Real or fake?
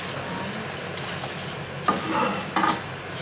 real